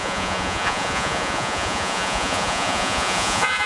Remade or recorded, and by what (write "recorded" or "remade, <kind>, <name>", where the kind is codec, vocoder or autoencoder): remade, vocoder, Vocos